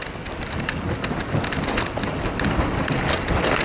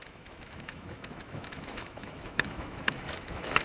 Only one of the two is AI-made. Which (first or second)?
second